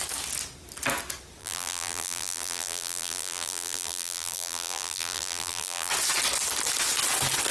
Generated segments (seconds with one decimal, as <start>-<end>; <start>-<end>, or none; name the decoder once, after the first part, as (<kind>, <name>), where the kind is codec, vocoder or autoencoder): 1.4-5.9 (vocoder, BigVGAN v2)